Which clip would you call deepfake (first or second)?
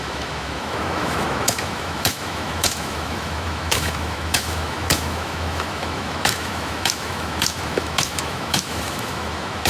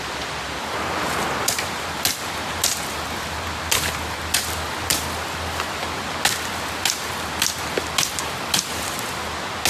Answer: first